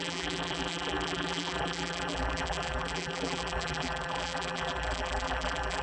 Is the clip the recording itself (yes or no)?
no